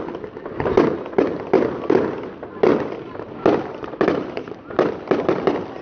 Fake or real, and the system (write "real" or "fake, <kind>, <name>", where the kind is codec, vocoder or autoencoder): real